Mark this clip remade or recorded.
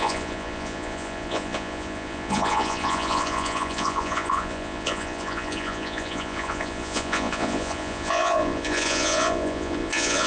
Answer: remade